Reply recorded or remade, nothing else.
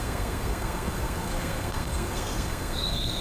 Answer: remade